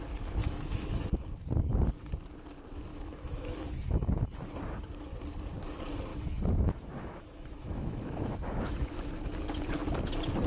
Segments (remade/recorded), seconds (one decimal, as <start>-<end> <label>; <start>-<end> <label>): 0.0-0.4 recorded; 0.4-1.1 remade; 1.1-2.9 recorded; 2.9-4.3 remade; 4.3-6.1 recorded; 6.1-9.1 remade; 9.1-10.5 recorded